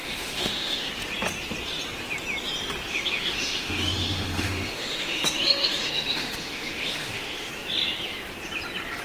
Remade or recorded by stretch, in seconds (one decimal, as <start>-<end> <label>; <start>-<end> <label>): 0.0-0.9 remade; 0.9-2.9 recorded; 2.9-7.5 remade; 7.5-9.0 recorded